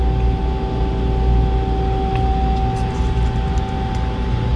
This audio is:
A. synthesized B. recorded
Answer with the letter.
B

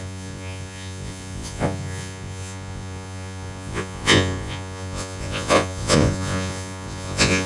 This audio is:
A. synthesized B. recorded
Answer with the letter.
A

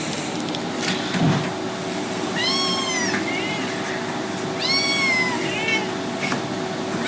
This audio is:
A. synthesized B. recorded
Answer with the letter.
B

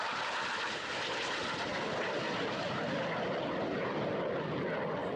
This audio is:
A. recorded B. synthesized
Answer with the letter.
A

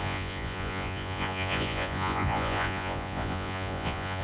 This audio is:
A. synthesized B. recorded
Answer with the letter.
A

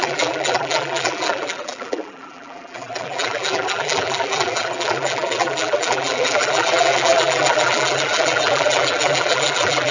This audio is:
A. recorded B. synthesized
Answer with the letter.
B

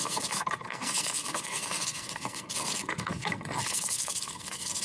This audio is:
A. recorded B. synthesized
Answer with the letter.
B